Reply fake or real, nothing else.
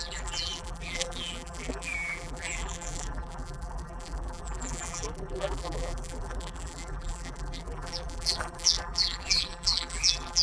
fake